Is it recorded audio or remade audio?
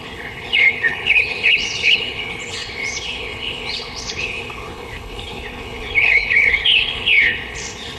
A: remade